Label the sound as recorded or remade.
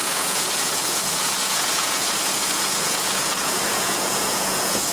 remade